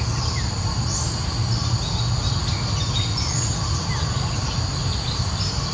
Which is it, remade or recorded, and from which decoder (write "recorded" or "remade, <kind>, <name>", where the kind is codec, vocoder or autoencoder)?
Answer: recorded